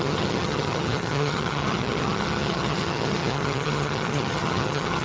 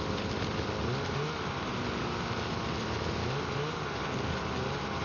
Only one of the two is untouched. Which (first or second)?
second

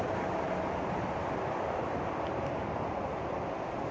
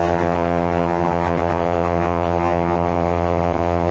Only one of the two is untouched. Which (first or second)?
first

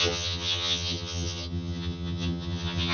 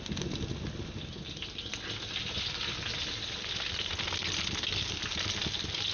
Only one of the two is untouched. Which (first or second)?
second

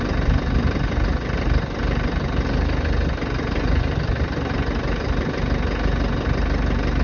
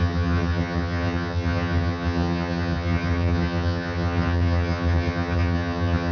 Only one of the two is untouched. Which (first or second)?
first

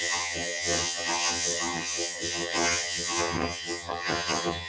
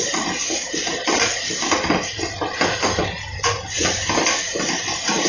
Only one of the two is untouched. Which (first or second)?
second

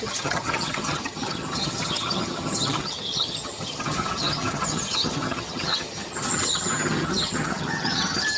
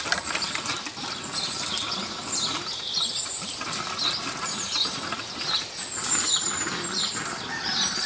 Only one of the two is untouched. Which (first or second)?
second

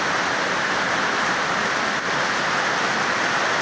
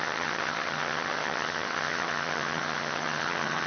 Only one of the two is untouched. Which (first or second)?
first